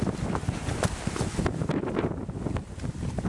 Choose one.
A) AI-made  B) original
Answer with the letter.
B